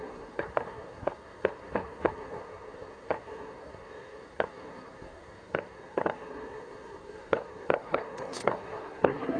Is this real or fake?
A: fake